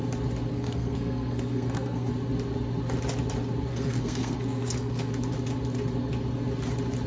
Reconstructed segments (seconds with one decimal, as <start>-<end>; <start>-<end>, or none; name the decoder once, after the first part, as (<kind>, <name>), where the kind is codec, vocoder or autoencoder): 0.5-2.1 (codec, SNAC); 3.7-5.1